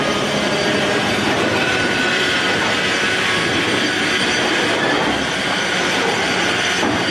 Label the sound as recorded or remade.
recorded